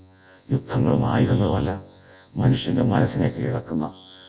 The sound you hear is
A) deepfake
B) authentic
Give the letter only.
A